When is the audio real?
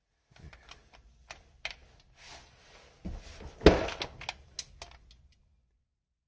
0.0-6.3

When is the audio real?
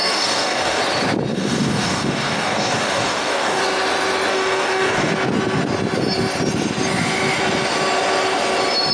0.8-1.3; 3.6-4.3; 5.1-8.9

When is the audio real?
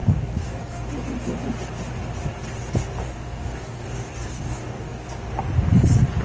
0.9-3.0; 5.1-6.2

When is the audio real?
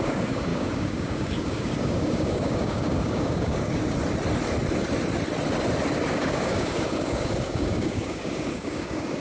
3.8-6.1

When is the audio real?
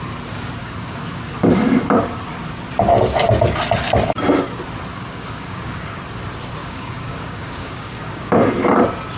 0.0-0.6; 1.3-4.9; 6.0-6.6; 8.3-9.2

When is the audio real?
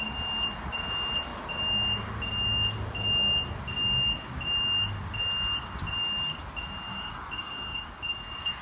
0.0-6.9; 7.9-8.6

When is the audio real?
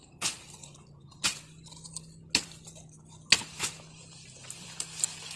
0.0-5.4